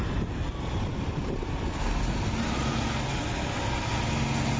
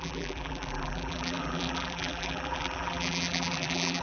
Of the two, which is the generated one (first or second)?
second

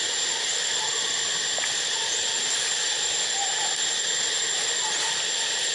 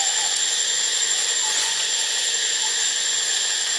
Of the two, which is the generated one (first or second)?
second